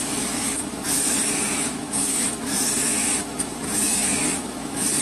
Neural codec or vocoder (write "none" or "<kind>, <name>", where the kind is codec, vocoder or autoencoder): autoencoder, DAC-VAE